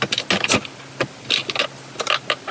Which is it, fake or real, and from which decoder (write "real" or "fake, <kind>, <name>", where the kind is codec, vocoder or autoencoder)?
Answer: real